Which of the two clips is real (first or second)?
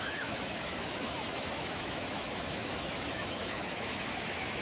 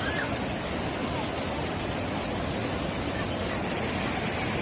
second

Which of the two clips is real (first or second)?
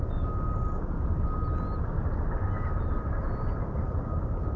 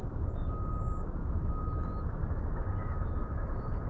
first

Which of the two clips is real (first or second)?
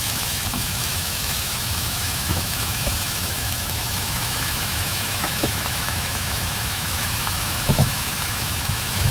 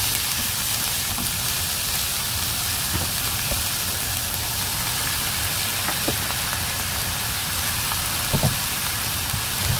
second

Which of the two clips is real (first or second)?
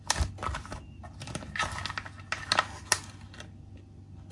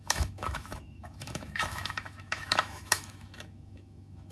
first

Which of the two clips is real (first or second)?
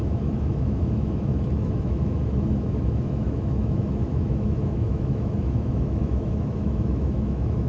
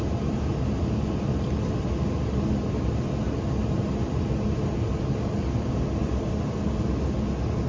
second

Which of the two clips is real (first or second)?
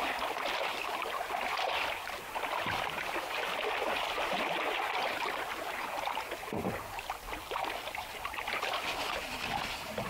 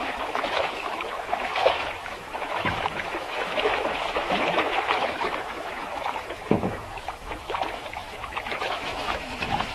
first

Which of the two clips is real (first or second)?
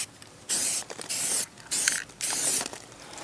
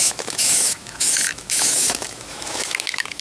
first